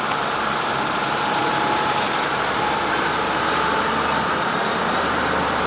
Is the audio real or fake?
fake